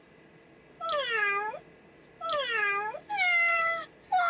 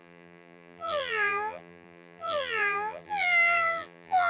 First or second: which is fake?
second